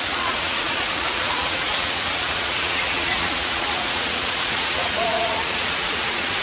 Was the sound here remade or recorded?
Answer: remade